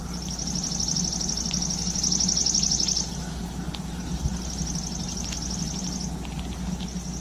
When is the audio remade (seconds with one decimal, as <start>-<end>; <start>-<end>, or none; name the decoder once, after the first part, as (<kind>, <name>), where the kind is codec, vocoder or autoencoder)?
none